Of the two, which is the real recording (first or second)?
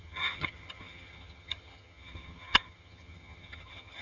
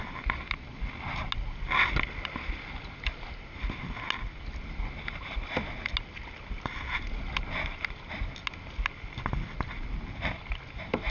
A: second